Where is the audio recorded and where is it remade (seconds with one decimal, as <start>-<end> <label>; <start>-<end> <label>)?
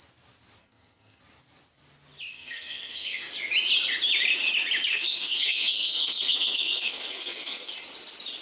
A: 0.0-0.6 recorded; 0.6-1.2 remade; 1.2-2.3 recorded; 2.3-3.3 remade; 3.3-4.9 recorded; 4.9-7.7 remade; 7.7-8.4 recorded